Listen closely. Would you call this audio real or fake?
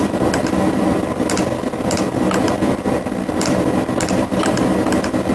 fake